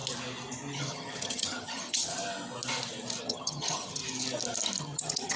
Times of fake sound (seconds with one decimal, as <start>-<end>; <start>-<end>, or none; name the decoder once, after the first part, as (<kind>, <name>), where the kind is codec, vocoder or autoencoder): 0.8-2.1 (vocoder, HiFi-GAN); 3.2-4.0; 4.8-5.4